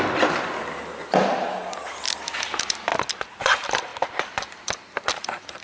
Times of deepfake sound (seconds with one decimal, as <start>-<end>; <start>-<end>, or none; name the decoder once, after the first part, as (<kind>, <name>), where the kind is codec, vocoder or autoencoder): 0.0-2.9 (vocoder, BigVGAN v2); 3.4-3.9; 4.5-5.6